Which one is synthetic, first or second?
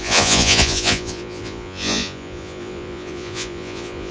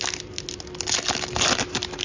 first